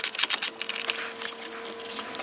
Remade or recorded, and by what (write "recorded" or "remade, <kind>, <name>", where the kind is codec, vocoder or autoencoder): recorded